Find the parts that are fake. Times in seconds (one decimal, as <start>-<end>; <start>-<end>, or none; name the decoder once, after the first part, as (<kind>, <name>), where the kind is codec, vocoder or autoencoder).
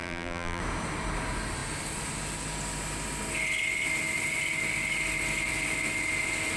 0.0-0.6 (vocoder, BigVGAN v2)